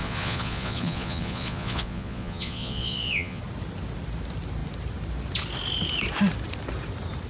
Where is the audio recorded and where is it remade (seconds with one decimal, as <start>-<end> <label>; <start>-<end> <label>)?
0.0-3.4 remade; 3.4-7.3 recorded